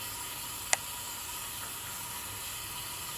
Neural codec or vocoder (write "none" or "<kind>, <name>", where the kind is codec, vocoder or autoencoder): none